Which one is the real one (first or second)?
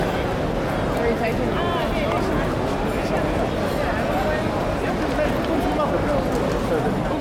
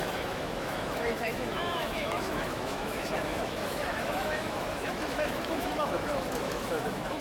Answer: first